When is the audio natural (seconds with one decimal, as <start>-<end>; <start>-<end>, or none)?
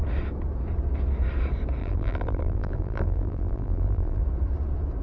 0.0-1.8; 4.2-5.0